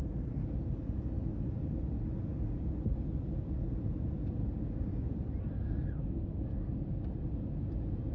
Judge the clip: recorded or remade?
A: recorded